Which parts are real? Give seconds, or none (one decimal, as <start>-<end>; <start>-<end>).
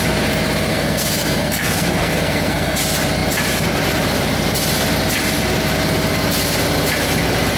0.0-0.7; 2.8-7.6